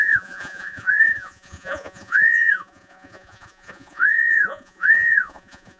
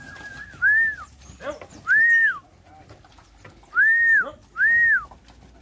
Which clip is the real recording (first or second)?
second